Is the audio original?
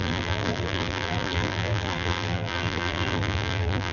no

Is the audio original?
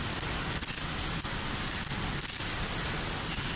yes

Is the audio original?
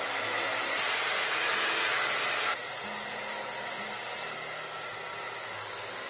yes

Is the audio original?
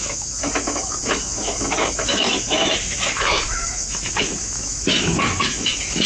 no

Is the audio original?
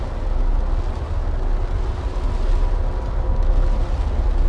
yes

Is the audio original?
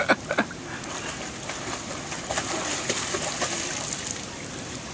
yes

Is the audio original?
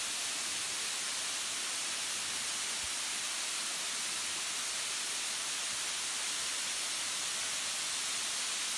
yes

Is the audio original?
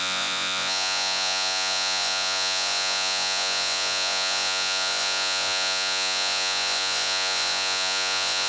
no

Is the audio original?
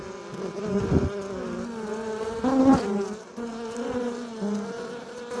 yes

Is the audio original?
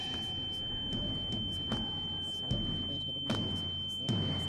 yes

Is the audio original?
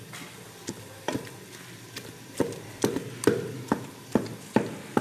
yes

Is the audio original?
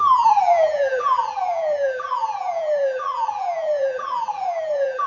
no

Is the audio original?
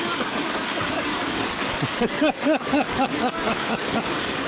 no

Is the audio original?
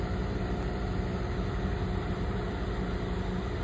yes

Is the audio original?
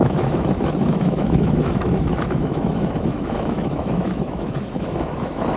no